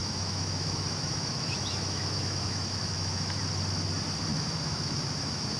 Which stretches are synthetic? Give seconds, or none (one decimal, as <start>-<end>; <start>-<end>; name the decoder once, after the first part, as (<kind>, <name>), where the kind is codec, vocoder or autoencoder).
0.0-3.4 (autoencoder, DAC-VAE); 4.3-5.6